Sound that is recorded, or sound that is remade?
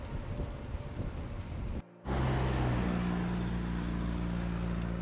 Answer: recorded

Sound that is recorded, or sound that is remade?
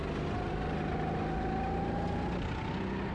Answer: recorded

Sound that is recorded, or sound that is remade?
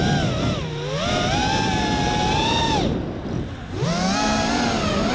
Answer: recorded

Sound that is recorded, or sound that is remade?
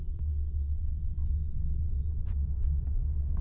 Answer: remade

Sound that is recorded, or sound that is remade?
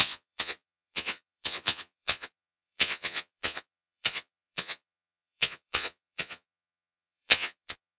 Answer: remade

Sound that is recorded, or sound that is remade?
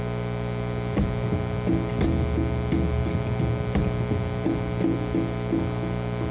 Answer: recorded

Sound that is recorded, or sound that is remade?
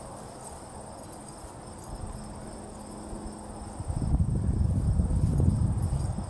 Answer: recorded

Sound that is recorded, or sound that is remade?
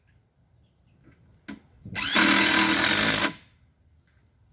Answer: recorded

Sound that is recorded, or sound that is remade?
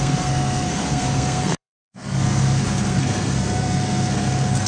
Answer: remade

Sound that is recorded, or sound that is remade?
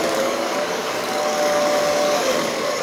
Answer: remade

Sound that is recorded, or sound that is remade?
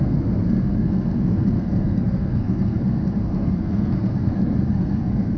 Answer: remade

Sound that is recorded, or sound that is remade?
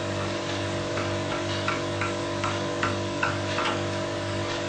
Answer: remade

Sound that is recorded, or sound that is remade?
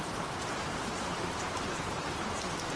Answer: remade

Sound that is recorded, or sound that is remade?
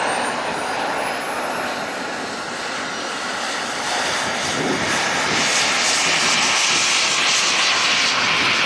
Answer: recorded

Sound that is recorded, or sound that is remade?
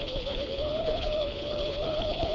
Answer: remade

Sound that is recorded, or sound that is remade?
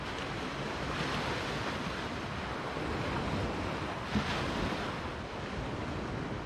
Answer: recorded